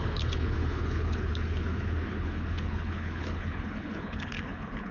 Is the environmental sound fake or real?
fake